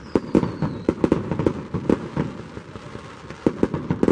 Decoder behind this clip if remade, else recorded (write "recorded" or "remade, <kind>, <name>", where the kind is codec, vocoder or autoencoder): recorded